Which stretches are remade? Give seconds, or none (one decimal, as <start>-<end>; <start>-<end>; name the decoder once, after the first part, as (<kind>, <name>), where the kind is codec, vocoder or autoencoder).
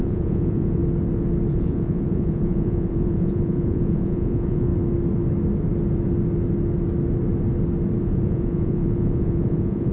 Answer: 0.0-0.8 (vocoder, Vocos); 1.5-4.7; 8.0-9.9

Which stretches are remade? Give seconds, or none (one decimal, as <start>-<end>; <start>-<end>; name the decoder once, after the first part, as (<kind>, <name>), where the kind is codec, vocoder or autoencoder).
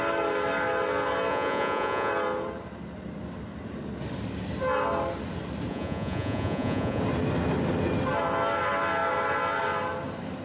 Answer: 1.3-2.1 (vocoder, Vocos); 5.7-7.0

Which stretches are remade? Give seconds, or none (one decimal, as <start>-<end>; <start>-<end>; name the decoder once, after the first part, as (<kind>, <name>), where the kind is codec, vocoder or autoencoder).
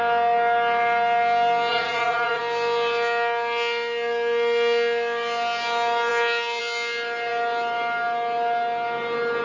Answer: 1.7-2.4 (vocoder, Vocos)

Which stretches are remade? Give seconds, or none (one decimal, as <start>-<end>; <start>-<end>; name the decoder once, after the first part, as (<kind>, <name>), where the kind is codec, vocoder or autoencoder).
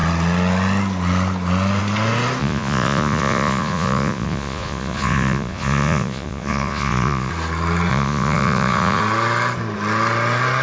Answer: 2.4-7.3 (vocoder, Vocos); 7.9-9.0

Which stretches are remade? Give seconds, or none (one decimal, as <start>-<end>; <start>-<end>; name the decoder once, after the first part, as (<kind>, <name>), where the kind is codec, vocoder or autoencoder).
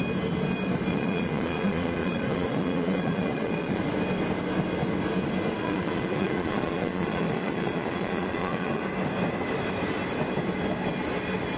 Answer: 0.9-3.8 (vocoder, Vocos); 5.6-8.8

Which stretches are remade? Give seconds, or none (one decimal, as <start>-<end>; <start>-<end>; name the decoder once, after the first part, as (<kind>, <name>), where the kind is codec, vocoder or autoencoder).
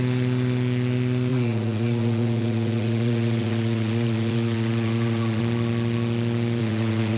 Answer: 1.3-5.4 (vocoder, Vocos); 6.6-7.2